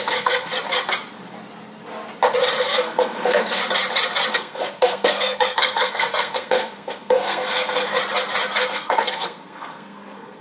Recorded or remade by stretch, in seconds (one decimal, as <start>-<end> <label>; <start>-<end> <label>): 0.0-0.5 remade; 0.5-2.6 recorded; 2.6-3.6 remade; 3.6-4.3 recorded; 4.3-8.0 remade; 8.0-8.6 recorded; 8.6-10.4 remade

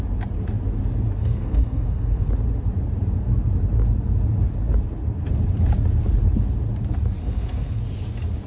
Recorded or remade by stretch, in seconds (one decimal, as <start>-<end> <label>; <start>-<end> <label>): 0.0-1.2 recorded; 1.2-2.3 remade; 2.3-7.2 recorded; 7.2-7.8 remade; 7.8-8.5 recorded

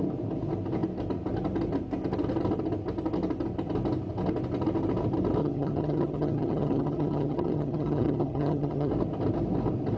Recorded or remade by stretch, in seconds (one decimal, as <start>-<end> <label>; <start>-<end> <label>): 0.0-5.4 recorded; 5.4-8.9 remade; 8.9-10.0 recorded